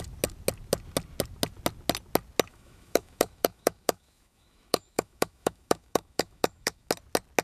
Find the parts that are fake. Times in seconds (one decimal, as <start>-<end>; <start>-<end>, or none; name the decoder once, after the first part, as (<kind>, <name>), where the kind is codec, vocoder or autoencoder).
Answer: 2.5-6.9 (autoencoder, DAC-VAE)